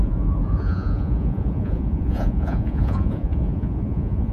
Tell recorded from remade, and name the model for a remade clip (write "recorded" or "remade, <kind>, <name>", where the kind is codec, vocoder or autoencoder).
remade, vocoder, Vocos